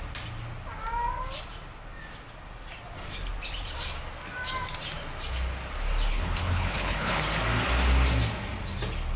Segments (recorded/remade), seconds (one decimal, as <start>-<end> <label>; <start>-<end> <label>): 0.0-6.1 recorded; 6.1-7.2 remade; 7.2-9.2 recorded